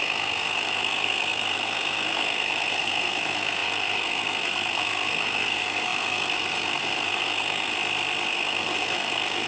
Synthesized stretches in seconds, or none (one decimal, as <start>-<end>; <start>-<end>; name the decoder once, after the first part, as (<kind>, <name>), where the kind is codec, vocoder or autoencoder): 0.0-7.7 (codec, SNAC); 8.3-9.5